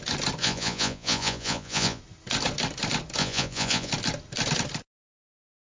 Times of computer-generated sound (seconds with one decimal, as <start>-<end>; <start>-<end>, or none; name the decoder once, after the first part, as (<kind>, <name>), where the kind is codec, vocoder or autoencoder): 0.4-2.0 (vocoder, Vocos); 3.2-3.9